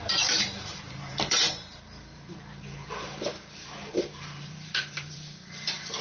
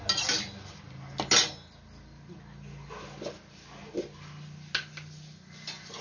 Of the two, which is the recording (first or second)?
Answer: second